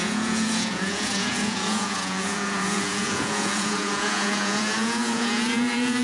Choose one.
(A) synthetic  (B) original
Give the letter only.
A